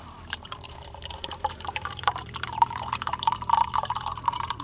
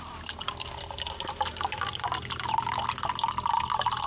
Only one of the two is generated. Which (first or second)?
first